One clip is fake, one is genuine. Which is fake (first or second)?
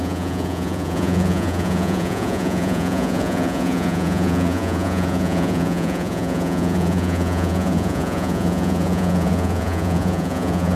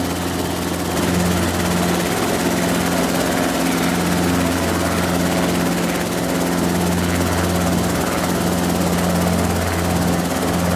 first